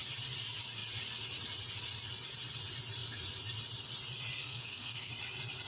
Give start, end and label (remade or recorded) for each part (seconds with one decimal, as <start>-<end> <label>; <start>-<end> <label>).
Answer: 0.0-4.4 recorded; 4.4-5.1 remade; 5.1-5.7 recorded